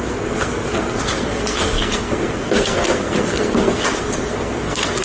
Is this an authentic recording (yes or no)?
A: no